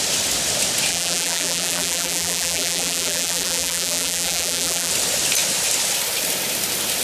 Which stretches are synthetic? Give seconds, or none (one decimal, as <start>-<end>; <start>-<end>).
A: 0.9-4.9